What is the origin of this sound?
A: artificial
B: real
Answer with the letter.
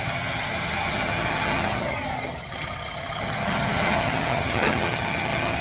A